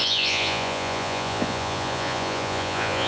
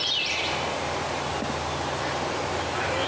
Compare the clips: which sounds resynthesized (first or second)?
first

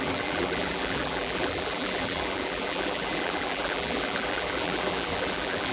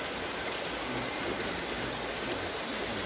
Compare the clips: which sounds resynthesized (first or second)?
first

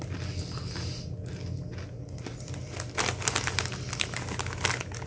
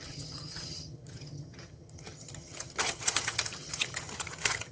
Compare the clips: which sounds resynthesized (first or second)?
second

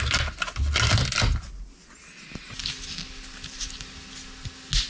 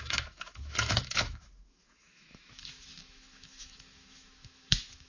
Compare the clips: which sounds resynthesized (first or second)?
second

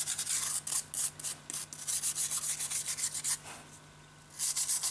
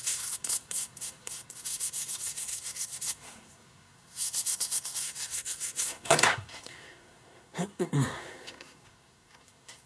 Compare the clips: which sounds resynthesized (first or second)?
second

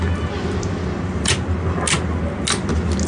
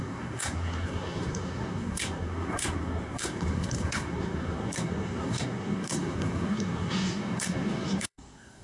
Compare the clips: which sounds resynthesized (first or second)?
second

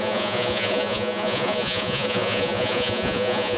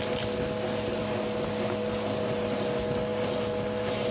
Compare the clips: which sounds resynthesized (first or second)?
first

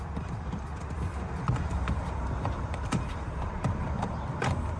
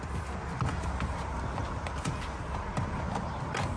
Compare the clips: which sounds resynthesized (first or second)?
first